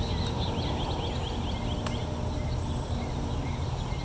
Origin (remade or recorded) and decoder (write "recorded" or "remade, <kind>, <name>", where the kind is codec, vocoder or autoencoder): recorded